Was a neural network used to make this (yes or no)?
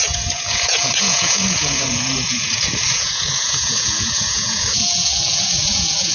yes